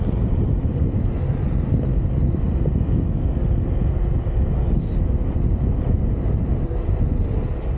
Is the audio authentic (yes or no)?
yes